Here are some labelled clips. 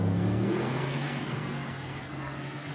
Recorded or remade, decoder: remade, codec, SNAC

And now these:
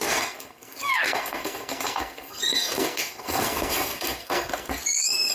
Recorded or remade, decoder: remade, codec, SNAC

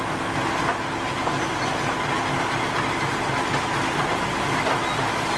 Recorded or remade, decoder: recorded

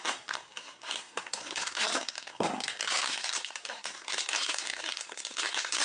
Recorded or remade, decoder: remade, codec, SNAC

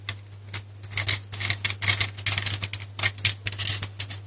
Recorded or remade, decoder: recorded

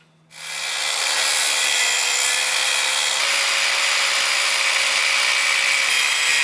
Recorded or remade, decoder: recorded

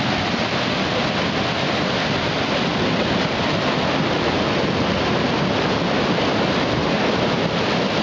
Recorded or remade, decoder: recorded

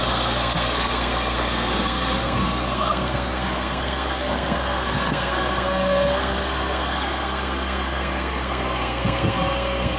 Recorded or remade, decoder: remade, codec, SNAC